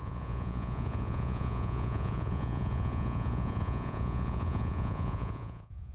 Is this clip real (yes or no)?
no